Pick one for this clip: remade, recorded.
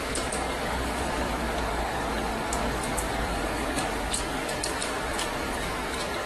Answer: remade